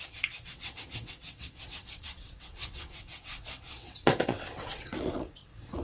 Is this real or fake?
fake